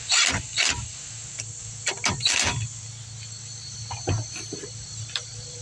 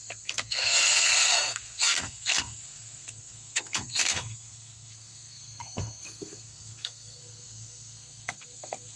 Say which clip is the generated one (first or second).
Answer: second